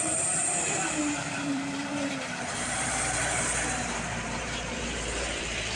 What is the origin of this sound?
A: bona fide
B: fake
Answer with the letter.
B